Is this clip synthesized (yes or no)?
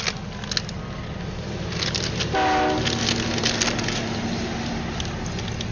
no